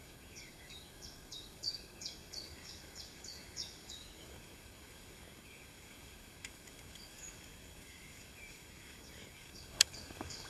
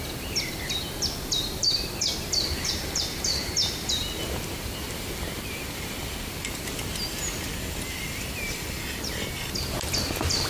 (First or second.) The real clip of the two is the second